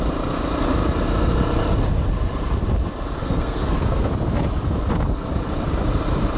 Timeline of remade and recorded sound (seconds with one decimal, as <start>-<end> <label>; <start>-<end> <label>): 0.0-3.2 recorded; 3.2-4.1 remade; 4.1-6.4 recorded